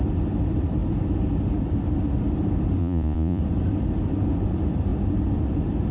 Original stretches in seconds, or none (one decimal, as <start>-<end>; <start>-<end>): 0.0-2.8; 3.4-5.9

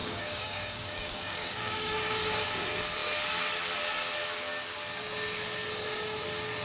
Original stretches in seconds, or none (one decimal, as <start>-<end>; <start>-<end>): 2.5-6.6

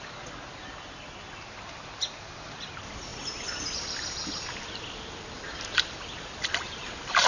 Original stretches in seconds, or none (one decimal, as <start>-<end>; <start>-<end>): 0.0-7.3

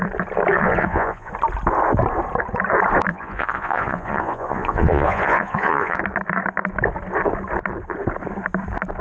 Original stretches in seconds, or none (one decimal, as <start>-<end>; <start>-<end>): 0.0-0.5; 1.3-3.1; 6.0-9.0